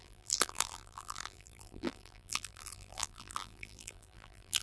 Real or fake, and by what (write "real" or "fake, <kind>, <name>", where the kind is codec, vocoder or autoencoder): fake, vocoder, BigVGAN v2